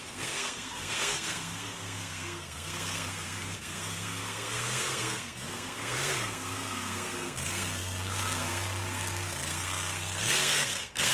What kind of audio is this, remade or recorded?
remade